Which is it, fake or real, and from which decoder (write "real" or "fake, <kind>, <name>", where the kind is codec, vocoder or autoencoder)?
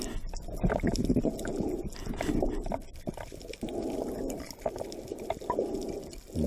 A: real